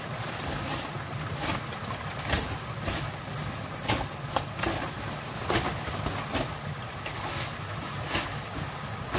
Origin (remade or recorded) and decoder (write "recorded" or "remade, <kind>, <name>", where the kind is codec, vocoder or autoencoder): recorded